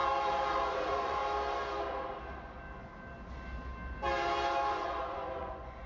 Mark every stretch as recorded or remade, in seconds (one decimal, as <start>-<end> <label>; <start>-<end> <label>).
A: 0.0-0.7 recorded; 0.7-1.2 remade; 1.2-4.7 recorded; 4.7-5.9 remade